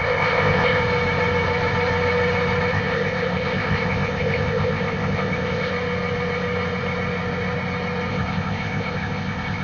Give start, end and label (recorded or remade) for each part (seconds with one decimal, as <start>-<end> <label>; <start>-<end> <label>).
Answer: 0.0-0.8 remade; 0.8-2.7 recorded; 2.7-5.7 remade; 5.7-8.1 recorded; 8.1-9.6 remade